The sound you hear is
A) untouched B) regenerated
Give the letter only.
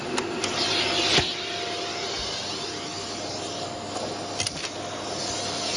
A